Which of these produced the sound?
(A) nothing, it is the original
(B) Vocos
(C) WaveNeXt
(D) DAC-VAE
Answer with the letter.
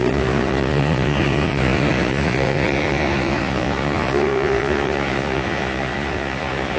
B